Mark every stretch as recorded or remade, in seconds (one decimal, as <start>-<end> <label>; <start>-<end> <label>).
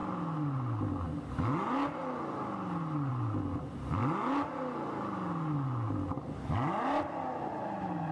0.0-8.1 recorded